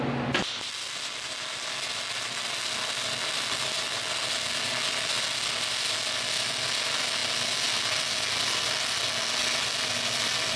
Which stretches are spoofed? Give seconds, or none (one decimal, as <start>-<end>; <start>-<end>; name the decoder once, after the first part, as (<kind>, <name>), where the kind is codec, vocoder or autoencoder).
none